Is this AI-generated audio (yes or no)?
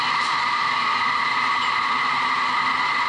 no